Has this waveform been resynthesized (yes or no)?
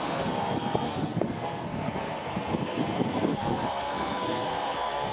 yes